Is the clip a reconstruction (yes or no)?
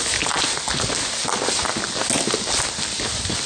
no